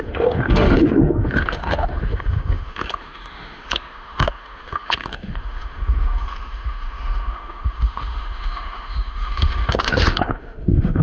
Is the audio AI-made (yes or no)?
yes